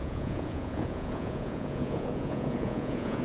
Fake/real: fake